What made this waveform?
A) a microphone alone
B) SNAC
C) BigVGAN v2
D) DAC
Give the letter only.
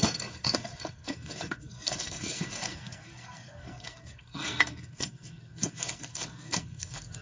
B